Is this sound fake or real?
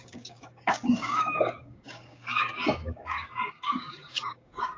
fake